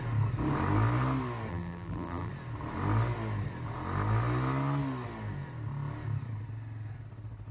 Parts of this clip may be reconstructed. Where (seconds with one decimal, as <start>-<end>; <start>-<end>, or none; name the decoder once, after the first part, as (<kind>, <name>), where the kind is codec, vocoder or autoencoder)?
1.5-2.3 (vocoder, BigVGAN v2)